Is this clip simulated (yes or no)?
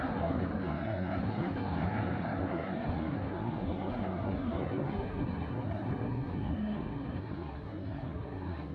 yes